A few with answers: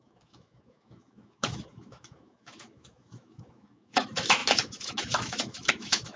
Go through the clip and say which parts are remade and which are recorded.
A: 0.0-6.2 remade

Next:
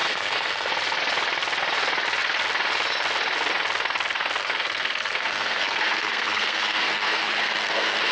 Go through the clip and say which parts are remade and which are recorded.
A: 0.0-0.7 remade; 0.7-4.4 recorded; 4.4-8.1 remade

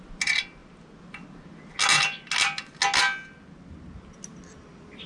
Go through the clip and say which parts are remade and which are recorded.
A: 0.0-5.1 recorded

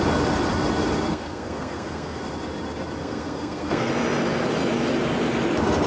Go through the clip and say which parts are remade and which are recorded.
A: 0.0-1.1 recorded; 1.1-2.2 remade; 2.2-3.0 recorded; 3.0-3.9 remade; 3.9-5.9 recorded

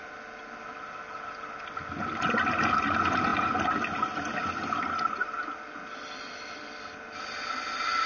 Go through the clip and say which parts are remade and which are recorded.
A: 0.0-8.1 recorded

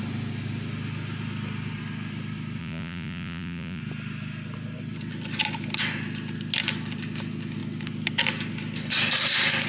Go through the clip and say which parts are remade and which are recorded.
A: 0.0-2.6 recorded; 2.6-3.8 remade; 3.8-9.7 recorded

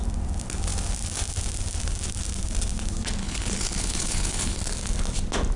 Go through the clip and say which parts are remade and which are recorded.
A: 0.0-3.2 recorded; 3.2-4.6 remade; 4.6-5.6 recorded